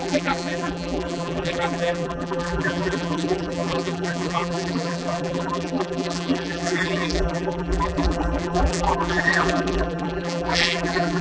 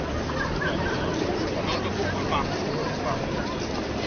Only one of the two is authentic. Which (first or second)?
second